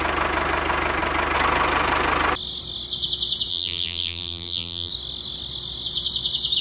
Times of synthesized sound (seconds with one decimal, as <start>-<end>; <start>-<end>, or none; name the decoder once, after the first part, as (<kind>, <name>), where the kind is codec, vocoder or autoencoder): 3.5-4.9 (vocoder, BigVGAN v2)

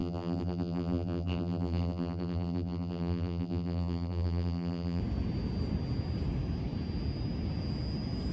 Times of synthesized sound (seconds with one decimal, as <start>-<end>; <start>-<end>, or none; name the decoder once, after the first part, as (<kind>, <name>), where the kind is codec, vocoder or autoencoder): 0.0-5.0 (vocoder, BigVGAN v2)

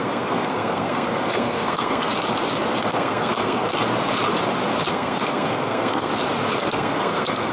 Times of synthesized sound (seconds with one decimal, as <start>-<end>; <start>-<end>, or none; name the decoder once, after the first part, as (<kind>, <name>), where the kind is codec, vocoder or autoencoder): 0.0-2.1 (codec, SNAC); 2.8-3.7; 4.9-6.1; 6.6-7.5